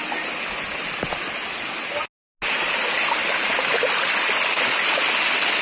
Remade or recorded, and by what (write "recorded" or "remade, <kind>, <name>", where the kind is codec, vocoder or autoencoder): recorded